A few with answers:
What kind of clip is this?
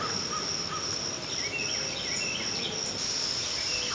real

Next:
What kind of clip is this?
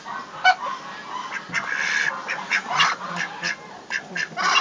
real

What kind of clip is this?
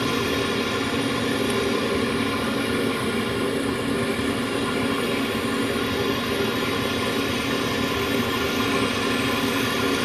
real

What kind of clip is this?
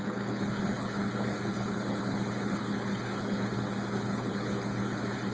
fake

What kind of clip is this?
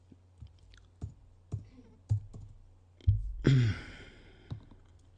real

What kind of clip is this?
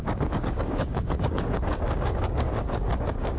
fake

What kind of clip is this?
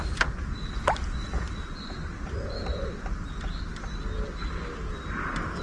real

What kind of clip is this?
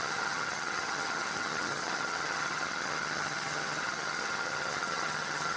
fake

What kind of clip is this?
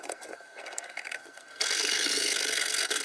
fake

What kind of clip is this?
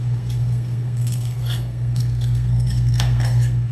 fake